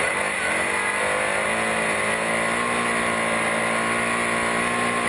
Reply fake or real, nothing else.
real